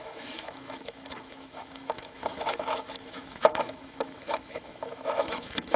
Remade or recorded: remade